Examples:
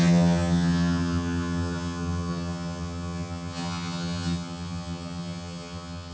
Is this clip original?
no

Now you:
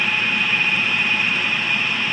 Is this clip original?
no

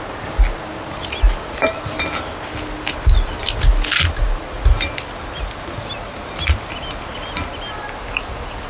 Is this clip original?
yes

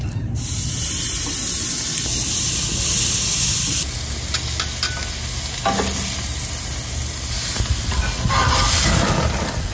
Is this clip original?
yes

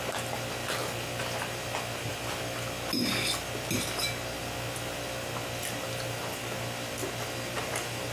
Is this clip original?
yes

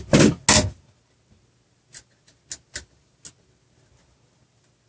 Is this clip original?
yes